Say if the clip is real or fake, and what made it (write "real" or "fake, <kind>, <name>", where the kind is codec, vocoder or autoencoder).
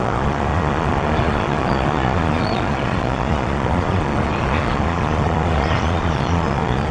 fake, vocoder, Vocos